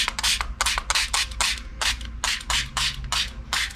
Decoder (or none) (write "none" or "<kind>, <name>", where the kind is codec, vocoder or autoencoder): none